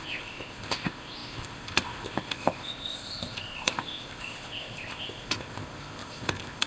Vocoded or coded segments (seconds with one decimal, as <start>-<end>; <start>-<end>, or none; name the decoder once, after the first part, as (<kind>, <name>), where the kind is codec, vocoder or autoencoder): 0.0-6.7 (codec, ZipCodec)